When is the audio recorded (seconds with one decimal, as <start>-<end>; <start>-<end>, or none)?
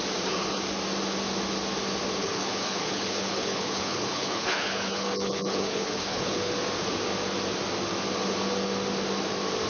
0.0-2.2; 6.5-9.7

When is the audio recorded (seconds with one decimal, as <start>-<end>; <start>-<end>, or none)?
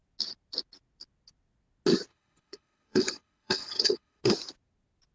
0.0-2.1; 4.2-5.1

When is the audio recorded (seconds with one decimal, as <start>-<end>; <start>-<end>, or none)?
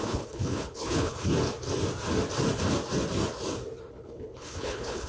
1.3-3.9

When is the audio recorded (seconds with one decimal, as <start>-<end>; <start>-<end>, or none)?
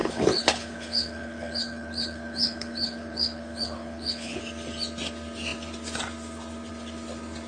4.4-7.5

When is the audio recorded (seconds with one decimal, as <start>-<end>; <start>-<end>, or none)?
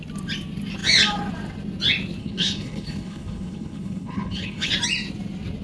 0.0-2.2; 4.7-5.6